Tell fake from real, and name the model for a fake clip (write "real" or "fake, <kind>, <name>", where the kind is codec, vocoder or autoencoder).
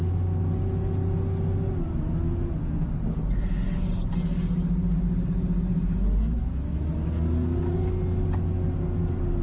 real